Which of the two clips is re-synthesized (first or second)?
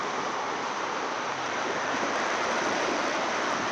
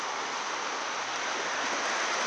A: first